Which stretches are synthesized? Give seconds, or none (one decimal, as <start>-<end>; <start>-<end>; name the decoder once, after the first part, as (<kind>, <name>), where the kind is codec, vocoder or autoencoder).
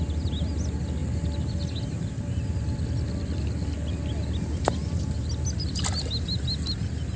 none